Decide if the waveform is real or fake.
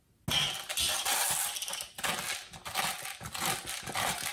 real